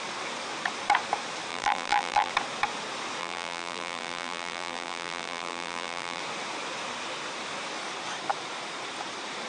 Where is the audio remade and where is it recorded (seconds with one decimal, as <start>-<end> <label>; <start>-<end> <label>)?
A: 0.0-1.5 recorded; 1.5-2.3 remade; 2.3-3.2 recorded; 3.2-6.2 remade; 6.2-9.5 recorded